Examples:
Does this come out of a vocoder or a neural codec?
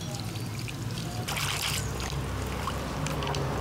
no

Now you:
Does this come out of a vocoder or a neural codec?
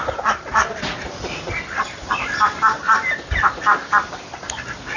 no